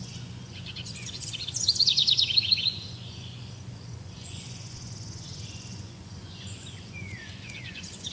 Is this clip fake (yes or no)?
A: yes